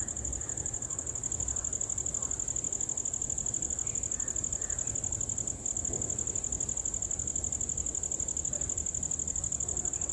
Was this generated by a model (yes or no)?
no